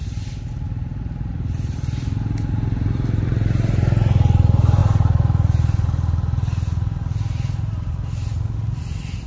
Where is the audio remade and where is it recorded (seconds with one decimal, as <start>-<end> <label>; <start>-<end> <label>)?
0.0-9.3 recorded